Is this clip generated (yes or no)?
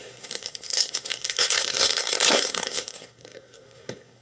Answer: yes